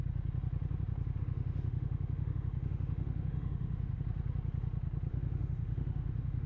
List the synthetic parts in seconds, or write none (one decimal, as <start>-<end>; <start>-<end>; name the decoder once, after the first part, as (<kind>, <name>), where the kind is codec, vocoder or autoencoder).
1.2-4.0 (autoencoder, DAC-VAE); 5.1-6.5